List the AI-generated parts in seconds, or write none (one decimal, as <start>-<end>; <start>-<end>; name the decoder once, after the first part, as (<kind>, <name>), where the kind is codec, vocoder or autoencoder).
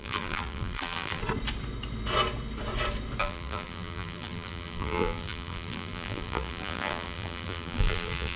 0.0-1.2 (vocoder, BigVGAN v2); 3.2-8.4